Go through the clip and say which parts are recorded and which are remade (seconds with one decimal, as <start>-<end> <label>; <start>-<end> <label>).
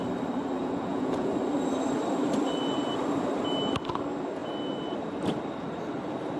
0.0-0.6 recorded; 0.6-1.3 remade; 1.3-6.4 recorded